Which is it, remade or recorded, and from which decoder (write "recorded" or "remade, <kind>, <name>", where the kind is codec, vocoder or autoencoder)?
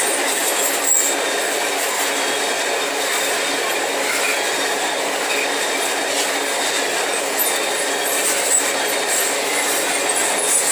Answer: recorded